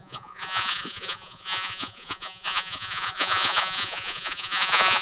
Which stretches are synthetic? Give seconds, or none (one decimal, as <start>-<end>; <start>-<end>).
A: 0.0-5.0

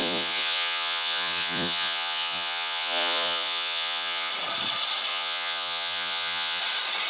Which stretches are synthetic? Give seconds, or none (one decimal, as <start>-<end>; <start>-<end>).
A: 0.0-4.3; 5.1-6.6

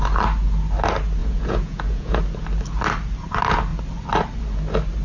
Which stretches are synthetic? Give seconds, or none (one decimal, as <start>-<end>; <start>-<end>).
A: 1.2-2.2

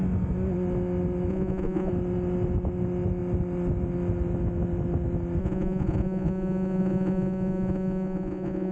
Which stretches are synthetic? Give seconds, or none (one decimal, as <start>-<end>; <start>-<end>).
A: 1.3-1.9; 5.4-8.7

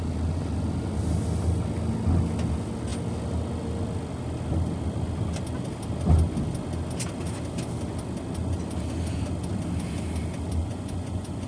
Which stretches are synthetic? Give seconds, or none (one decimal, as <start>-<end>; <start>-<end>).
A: 10.6-11.5

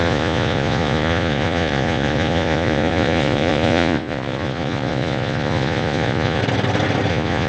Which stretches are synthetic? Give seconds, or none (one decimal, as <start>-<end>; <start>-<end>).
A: 0.0-6.4; 7.1-7.5